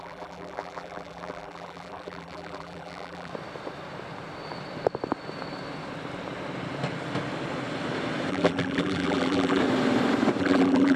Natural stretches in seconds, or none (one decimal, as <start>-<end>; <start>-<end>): 3.3-8.3; 9.6-10.4